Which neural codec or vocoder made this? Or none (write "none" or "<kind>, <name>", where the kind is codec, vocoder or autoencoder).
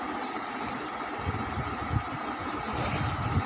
none